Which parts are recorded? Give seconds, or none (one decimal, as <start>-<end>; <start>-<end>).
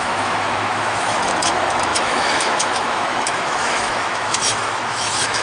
none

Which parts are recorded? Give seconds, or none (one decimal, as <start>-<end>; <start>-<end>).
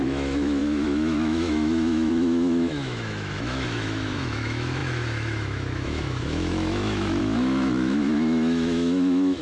none